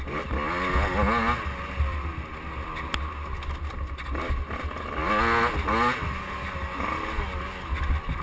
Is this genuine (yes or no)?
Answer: yes